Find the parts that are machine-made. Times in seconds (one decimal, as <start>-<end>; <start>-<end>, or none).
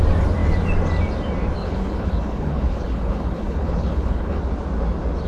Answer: 1.6-4.4